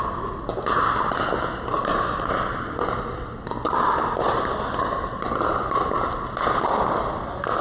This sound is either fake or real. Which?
real